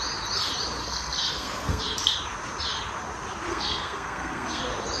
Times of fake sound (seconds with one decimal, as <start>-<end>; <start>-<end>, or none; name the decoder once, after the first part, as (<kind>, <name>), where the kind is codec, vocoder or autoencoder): 0.8-1.8 (codec, SNAC); 3.5-4.6